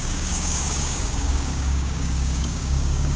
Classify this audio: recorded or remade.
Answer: remade